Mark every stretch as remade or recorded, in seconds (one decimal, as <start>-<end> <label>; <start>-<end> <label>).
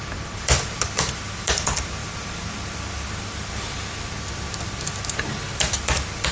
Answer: 0.0-6.3 recorded